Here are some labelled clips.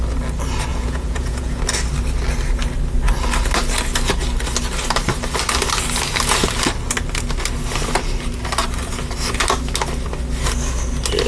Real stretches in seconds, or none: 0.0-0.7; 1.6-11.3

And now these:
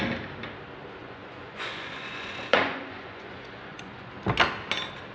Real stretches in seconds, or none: 0.0-1.0; 4.1-5.1

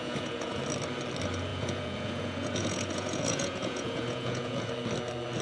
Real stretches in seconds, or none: 0.6-1.5; 4.7-5.4

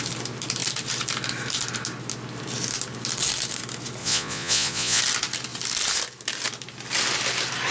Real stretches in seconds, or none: 0.0-4.0; 5.0-7.7

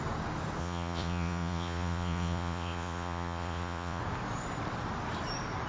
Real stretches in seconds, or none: 0.0-0.6; 4.0-5.7

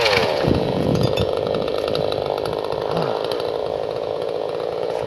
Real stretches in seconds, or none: 1.7-3.6

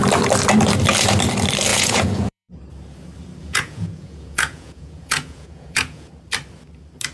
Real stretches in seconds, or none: 0.0-1.7; 2.6-3.4; 6.1-7.1